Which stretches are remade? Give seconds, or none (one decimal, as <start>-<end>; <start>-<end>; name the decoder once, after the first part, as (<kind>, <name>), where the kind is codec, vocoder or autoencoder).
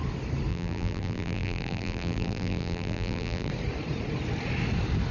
0.5-3.5 (vocoder, BigVGAN v2)